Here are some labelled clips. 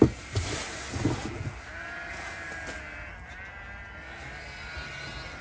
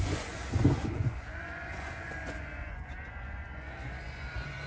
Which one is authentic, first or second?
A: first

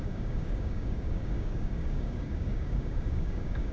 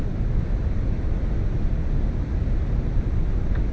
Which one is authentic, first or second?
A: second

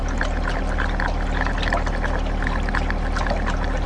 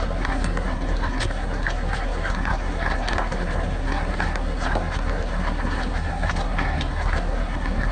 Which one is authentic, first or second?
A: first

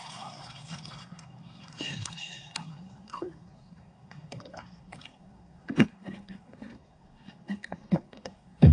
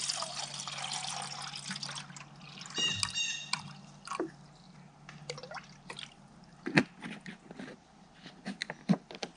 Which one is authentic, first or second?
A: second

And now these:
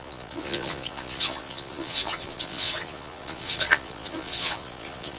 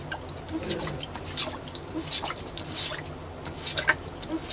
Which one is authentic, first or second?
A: second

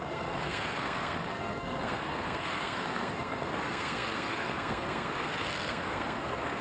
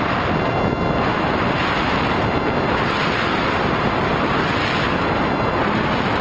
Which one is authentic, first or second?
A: second